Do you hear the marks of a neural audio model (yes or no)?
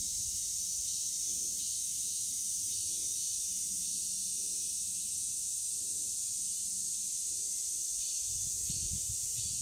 no